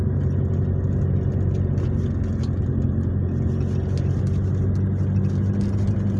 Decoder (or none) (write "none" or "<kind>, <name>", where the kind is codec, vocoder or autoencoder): none